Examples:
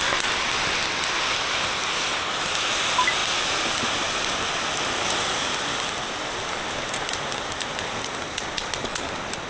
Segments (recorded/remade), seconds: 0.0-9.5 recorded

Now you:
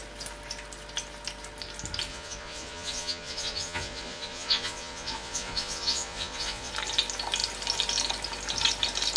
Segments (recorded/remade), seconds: 0.0-2.1 recorded; 2.1-6.7 remade; 6.7-9.2 recorded

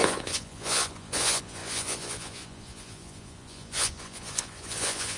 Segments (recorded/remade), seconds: 0.0-5.2 remade

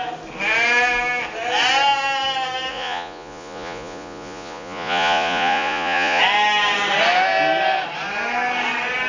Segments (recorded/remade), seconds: 0.0-2.7 recorded; 2.7-6.2 remade; 6.2-9.1 recorded